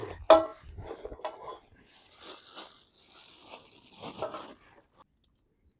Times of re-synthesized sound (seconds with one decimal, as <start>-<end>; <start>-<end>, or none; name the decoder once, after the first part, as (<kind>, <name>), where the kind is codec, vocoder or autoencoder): none